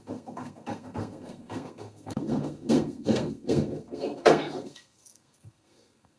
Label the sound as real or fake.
fake